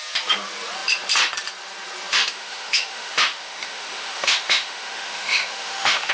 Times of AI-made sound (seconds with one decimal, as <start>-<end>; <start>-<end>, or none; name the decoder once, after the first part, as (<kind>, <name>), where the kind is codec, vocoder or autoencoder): 2.1-6.1 (autoencoder, DAC-VAE)